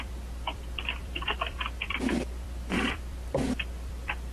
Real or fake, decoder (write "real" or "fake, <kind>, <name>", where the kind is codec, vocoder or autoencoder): fake, vocoder, BigVGAN v2